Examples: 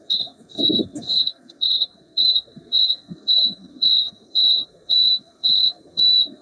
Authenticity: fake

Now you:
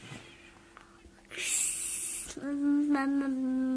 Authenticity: real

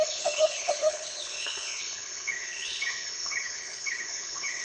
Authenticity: fake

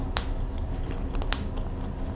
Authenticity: real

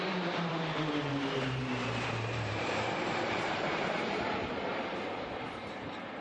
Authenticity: fake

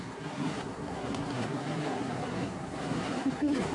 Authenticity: fake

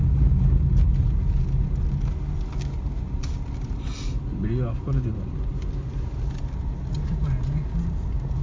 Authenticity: real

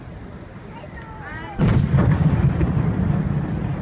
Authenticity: real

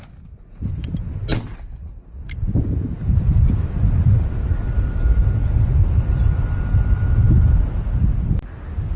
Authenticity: real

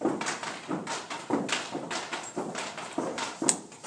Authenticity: real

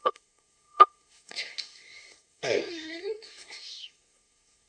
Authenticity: fake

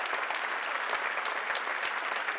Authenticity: real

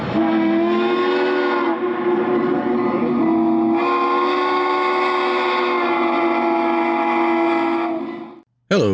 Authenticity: real